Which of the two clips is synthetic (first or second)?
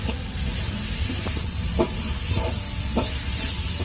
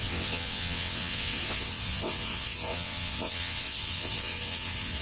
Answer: second